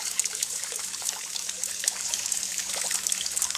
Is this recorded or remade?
remade